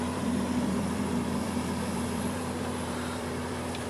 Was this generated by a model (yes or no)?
yes